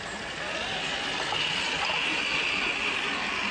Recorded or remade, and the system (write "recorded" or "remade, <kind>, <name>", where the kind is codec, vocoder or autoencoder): recorded